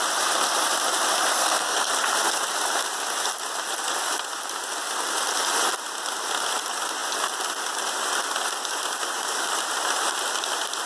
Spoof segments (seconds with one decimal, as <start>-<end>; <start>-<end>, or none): 1.3-1.9